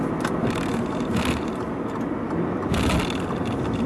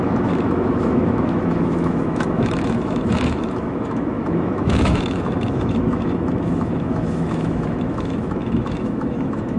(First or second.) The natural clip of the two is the first